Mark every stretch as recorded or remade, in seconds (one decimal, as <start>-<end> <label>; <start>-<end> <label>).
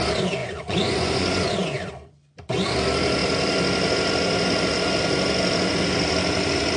0.0-0.4 recorded; 0.4-1.9 remade; 1.9-6.8 recorded